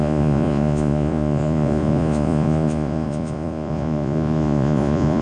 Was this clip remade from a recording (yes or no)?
yes